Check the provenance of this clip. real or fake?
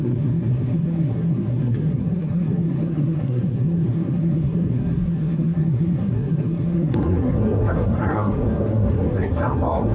fake